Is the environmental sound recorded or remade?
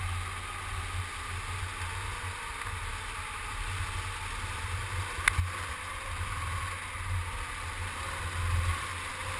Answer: recorded